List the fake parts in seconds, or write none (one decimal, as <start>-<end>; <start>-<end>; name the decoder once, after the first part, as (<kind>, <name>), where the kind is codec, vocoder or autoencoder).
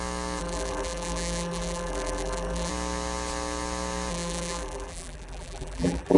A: 0.4-2.7 (vocoder, BigVGAN v2); 4.1-6.2